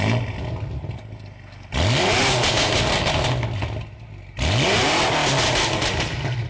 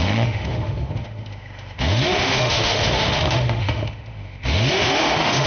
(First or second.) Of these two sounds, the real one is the first